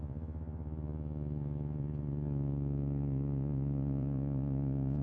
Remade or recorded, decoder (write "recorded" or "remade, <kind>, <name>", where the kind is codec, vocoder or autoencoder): remade, vocoder, Vocos